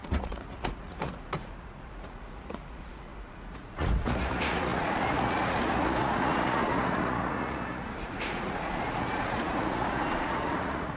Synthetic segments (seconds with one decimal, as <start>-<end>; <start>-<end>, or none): 0.0-11.0